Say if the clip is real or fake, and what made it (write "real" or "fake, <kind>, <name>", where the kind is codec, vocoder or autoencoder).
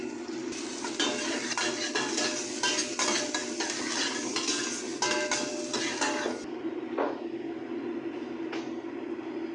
real